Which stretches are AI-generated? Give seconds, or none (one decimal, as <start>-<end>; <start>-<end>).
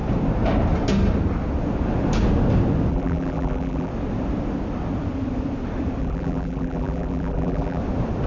2.9-3.9; 6.0-7.8